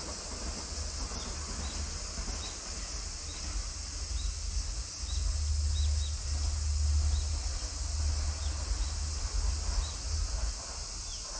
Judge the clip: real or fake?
real